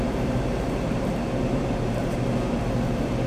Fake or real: fake